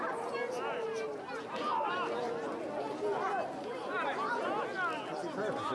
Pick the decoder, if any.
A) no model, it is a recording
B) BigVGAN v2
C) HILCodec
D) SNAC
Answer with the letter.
A